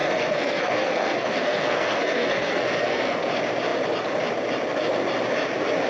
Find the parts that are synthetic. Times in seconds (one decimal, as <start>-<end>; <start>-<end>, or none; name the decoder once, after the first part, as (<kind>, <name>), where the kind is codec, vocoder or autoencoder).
0.0-3.3 (codec, SNAC)